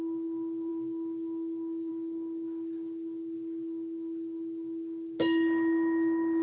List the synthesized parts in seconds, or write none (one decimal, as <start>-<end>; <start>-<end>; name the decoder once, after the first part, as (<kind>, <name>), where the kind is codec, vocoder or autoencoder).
none

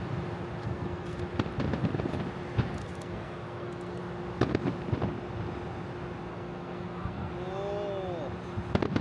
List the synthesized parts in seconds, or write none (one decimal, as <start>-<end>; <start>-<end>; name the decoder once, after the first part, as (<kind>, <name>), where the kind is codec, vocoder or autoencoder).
0.6-1.2 (codec, SNAC); 2.8-4.0; 6.3-7.3

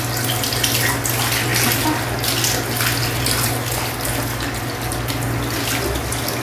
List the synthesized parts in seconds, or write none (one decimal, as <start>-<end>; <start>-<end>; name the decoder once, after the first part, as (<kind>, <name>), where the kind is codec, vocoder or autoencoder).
none

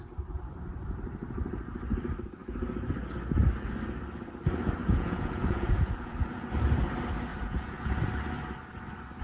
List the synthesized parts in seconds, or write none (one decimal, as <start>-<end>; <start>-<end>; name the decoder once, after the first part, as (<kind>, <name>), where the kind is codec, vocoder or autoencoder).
4.8-6.5 (vocoder, Vocos); 7.3-8.0

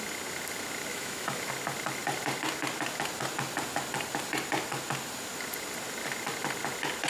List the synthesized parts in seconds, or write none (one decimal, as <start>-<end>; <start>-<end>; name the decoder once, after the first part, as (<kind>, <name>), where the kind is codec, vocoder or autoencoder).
0.9-1.5 (autoencoder, DAC-VAE)

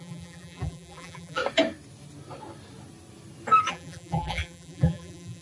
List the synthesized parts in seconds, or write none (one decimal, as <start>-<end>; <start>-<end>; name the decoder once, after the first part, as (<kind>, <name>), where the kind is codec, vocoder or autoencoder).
0.0-1.4 (vocoder, BigVGAN v2); 3.7-5.4